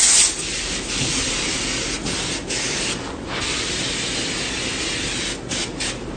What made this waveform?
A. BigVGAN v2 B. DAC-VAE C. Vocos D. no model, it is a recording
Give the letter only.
D